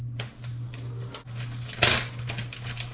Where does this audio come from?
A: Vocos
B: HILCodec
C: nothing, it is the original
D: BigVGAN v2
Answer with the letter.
C